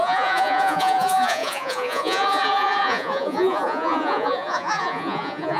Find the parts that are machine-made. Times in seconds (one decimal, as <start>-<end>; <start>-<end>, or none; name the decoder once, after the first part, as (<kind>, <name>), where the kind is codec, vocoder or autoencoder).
0.0-5.6 (vocoder, Vocos)